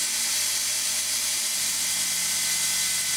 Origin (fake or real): real